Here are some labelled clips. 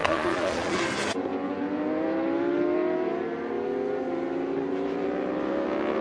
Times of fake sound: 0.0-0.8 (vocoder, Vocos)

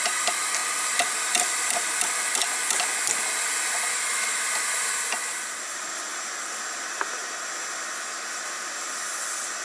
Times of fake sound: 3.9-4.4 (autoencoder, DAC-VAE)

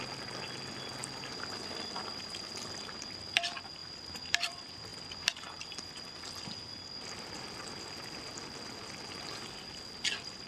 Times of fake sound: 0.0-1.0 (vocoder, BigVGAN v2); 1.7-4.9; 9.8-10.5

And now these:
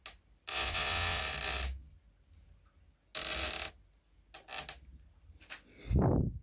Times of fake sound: 0.5-1.2 (vocoder, WaveNeXt)

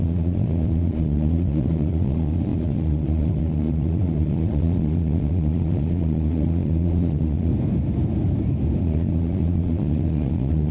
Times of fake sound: 0.0-7.5 (vocoder, Vocos); 8.8-10.7

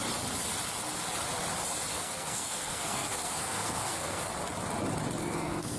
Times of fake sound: 1.9-4.3 (codec, SNAC); 5.2-5.8